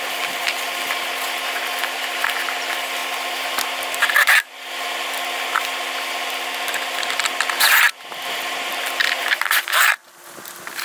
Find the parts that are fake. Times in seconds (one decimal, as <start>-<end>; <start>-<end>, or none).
9.2-9.9